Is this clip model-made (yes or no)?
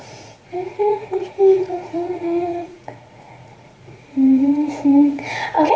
yes